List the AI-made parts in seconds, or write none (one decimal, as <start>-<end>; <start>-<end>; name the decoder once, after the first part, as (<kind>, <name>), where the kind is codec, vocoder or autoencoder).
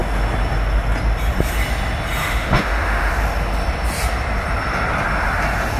2.2-3.1 (autoencoder, DAC-VAE)